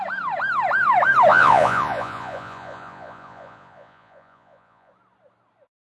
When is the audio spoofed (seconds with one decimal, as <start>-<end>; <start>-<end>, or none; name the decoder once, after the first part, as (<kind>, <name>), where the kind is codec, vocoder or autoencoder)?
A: 1.3-4.9 (vocoder, Vocos)